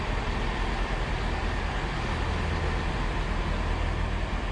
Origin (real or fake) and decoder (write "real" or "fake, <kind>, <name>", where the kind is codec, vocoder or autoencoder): real